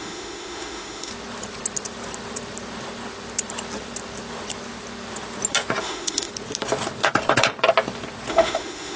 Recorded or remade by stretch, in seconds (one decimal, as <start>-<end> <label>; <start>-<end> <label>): 0.0-1.1 remade; 1.1-5.8 recorded; 5.8-6.3 remade; 6.3-8.3 recorded; 8.3-9.0 remade